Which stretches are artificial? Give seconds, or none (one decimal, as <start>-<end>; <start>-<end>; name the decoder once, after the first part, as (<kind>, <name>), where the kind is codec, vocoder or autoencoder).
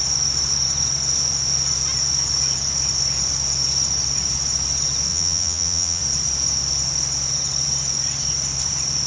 5.1-6.0 (vocoder, Vocos)